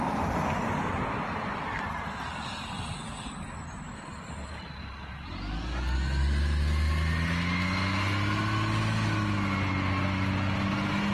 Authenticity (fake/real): real